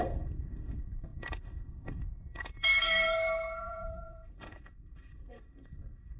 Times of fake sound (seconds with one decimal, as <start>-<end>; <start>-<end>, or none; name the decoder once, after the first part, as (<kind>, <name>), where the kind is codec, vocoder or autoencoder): 0.0-6.2 (codec, SNAC)

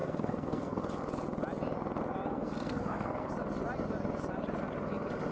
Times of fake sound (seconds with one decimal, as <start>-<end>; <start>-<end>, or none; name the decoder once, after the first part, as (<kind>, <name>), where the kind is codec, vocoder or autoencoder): 0.0-0.8 (codec, SNAC); 2.3-3.3

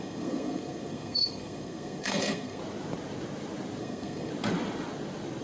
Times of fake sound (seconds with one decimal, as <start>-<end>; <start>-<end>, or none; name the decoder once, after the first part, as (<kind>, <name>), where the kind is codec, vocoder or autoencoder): 0.0-2.6 (codec, SNAC); 3.8-4.3

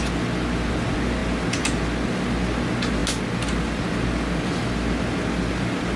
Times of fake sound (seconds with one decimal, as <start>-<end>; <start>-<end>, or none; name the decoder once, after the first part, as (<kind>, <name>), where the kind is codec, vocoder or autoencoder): none

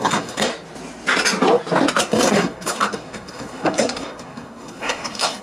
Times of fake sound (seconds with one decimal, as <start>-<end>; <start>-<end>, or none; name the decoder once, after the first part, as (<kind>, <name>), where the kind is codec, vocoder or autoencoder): 0.0-0.5 (codec, SNAC); 2.0-5.4